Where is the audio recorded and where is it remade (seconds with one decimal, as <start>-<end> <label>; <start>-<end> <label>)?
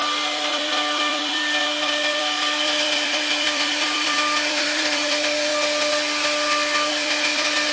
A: 0.0-5.5 remade; 5.5-6.9 recorded; 6.9-7.7 remade